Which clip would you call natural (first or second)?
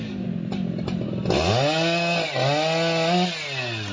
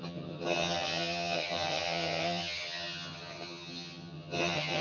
first